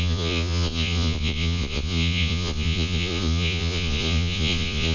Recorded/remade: remade